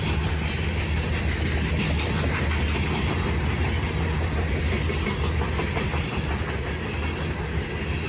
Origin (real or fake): real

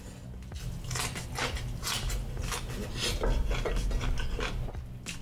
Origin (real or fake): real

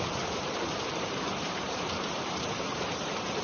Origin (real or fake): fake